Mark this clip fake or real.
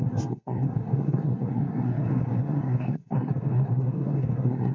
fake